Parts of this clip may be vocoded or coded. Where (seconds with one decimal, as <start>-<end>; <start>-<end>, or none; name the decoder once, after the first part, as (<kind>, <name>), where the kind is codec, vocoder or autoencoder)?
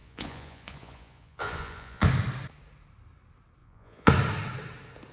0.0-2.1 (vocoder, Vocos); 3.6-4.1